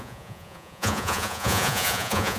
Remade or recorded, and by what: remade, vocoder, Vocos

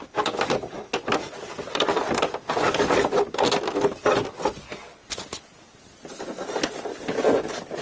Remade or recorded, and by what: recorded